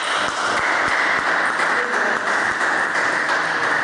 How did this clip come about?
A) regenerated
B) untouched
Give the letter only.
B